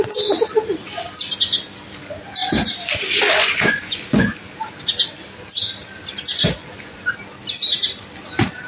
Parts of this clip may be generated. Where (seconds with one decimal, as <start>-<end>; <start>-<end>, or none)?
3.4-4.3; 6.6-7.1